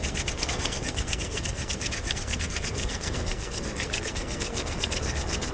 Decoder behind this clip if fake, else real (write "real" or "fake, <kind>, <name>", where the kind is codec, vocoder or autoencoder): fake, codec, SNAC